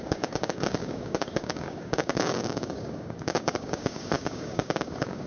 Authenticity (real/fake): fake